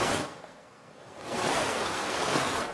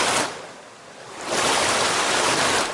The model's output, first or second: first